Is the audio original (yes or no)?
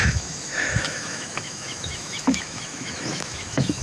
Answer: no